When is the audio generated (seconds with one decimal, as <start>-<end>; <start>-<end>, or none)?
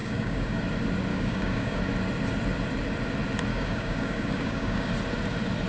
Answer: 0.0-0.6; 1.1-1.8; 3.5-4.9